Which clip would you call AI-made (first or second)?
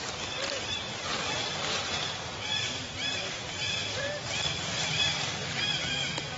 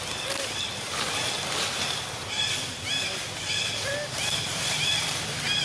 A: first